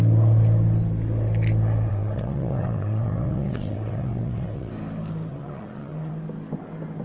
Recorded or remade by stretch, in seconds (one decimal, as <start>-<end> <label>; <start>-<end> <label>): 0.0-1.9 recorded; 1.9-4.7 remade; 4.7-5.3 recorded; 5.3-6.1 remade; 6.1-7.0 recorded